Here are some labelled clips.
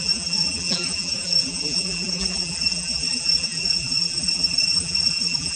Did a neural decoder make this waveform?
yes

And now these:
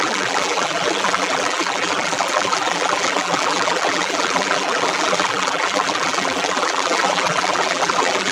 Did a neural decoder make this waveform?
yes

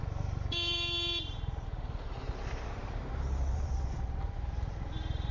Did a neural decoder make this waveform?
yes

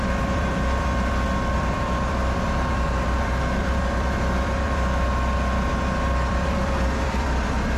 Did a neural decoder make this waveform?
yes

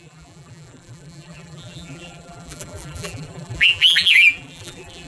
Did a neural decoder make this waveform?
yes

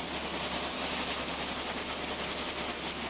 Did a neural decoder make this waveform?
no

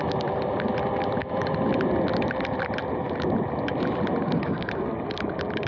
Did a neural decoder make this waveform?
yes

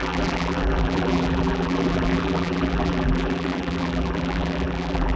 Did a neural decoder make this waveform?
yes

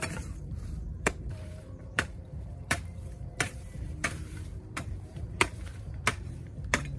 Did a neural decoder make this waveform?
yes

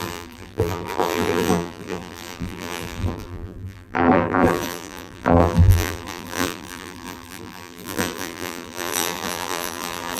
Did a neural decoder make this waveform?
yes